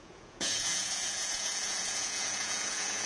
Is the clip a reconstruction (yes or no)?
yes